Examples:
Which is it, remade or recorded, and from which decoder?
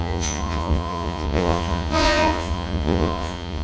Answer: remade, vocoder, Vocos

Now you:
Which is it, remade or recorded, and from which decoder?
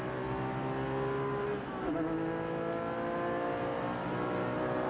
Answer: recorded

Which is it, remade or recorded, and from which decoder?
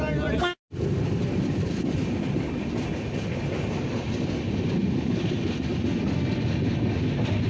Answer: recorded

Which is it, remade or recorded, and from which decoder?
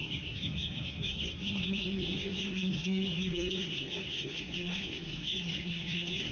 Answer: remade, codec, SNAC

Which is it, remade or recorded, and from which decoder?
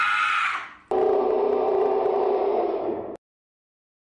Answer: recorded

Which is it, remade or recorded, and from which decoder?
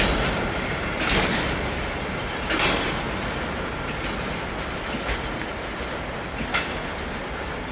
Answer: recorded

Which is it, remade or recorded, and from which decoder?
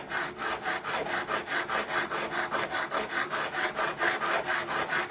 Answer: recorded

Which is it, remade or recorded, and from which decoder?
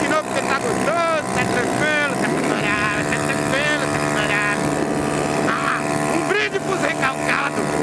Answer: recorded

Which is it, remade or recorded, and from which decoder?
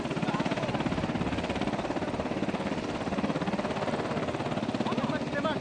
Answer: recorded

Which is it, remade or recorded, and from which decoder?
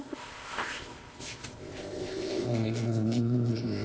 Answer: remade, codec, ZipCodec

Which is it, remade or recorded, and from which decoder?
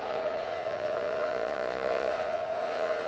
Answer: remade, vocoder, Vocos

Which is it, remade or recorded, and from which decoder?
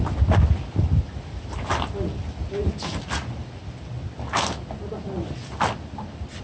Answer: recorded